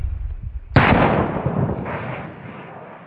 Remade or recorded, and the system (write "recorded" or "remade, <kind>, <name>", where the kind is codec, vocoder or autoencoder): recorded